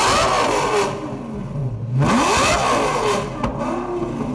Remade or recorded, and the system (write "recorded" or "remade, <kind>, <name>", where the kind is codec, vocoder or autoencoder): recorded